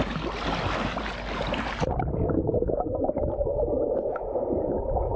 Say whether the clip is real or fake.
real